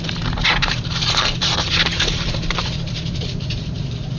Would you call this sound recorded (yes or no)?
no